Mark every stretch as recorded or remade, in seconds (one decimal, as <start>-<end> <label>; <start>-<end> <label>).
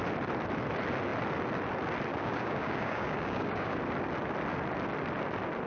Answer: 0.0-2.1 recorded; 2.1-3.8 remade; 3.8-5.7 recorded